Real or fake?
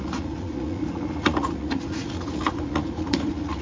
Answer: fake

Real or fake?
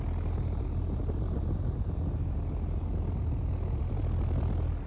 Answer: real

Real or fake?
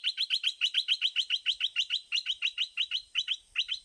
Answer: real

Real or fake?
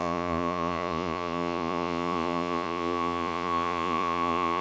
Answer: fake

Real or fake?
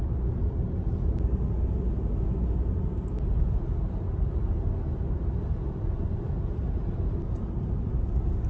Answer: real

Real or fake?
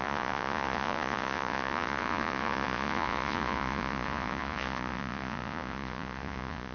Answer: fake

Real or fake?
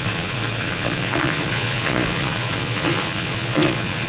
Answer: fake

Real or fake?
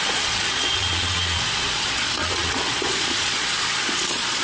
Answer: fake